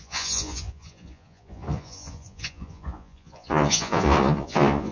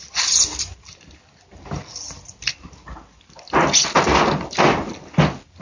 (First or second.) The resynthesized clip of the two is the first